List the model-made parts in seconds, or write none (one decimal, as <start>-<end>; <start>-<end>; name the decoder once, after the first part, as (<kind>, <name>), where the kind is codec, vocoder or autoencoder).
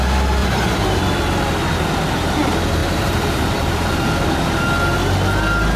0.4-1.0 (vocoder, BigVGAN v2); 2.8-3.9